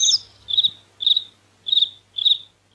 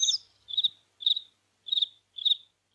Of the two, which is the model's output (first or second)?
second